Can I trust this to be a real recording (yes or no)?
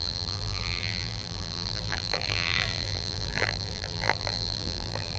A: no